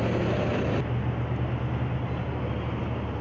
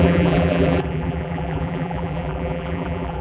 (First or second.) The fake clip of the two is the second